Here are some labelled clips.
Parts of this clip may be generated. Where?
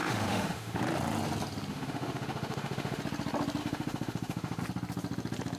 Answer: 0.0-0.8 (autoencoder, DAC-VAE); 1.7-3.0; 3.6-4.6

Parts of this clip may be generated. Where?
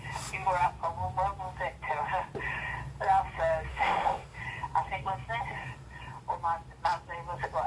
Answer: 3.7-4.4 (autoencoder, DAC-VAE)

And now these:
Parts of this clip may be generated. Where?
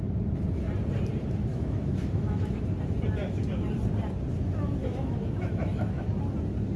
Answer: 1.5-2.6 (autoencoder, DAC-VAE); 4.8-6.2